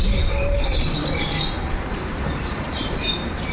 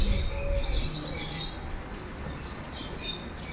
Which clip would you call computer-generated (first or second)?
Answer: first